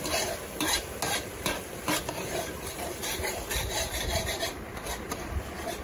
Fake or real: fake